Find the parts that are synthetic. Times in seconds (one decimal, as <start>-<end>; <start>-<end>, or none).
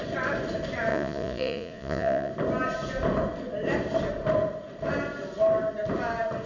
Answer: 0.9-2.3